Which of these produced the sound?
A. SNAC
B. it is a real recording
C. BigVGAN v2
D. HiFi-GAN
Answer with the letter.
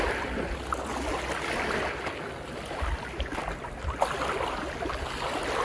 B